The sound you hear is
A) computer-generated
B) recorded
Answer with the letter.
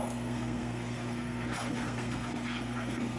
A